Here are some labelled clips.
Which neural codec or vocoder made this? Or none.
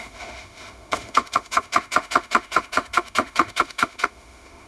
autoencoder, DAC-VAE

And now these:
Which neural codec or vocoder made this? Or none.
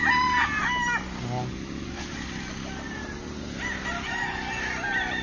none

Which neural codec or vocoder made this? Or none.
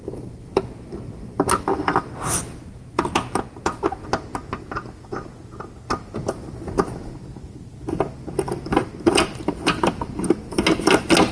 none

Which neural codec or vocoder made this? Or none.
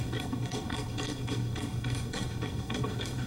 codec, SNAC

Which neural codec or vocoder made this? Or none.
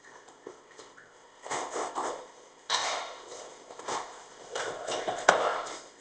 codec, ZipCodec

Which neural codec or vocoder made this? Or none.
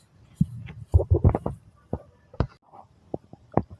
none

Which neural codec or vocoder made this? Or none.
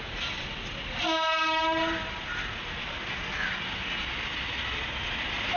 none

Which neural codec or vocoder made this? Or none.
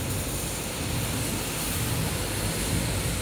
none